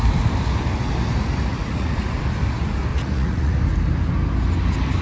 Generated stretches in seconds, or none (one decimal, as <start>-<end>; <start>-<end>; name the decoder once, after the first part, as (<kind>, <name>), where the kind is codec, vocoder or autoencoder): 1.5-2.2 (vocoder, Vocos); 2.9-3.6